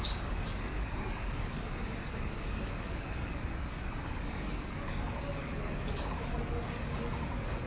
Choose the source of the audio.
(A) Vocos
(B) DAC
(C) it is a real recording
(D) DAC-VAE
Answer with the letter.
B